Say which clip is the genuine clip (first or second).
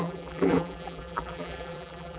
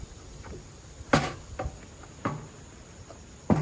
second